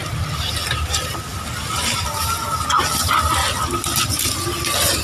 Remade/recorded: recorded